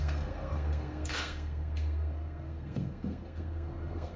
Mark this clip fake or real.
fake